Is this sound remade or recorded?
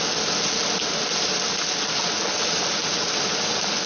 recorded